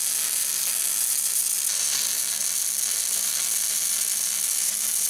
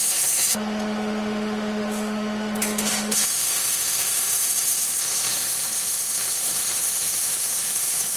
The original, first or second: first